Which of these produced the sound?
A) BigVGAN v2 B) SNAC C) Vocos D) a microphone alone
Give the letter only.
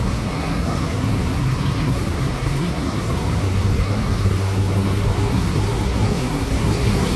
B